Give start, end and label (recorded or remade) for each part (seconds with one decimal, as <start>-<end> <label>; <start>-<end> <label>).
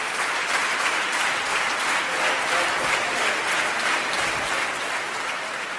0.0-5.8 recorded